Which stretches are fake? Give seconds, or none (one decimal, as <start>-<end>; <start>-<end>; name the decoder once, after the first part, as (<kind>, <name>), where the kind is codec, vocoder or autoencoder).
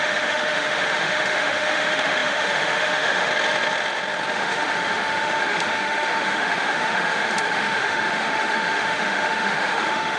0.0-3.3 (autoencoder, DAC-VAE); 4.3-10.2